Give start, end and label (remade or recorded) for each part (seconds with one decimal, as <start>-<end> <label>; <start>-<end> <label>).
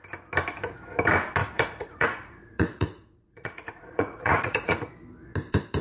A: 0.0-1.4 recorded; 1.4-4.9 remade; 4.9-5.8 recorded